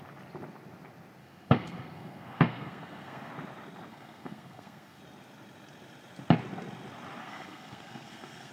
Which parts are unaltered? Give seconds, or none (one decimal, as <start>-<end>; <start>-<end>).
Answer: 0.0-1.2; 3.3-3.9; 5.0-7.2